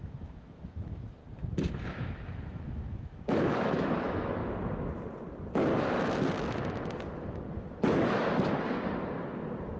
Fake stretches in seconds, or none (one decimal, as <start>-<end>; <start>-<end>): 0.0-1.2; 1.9-4.4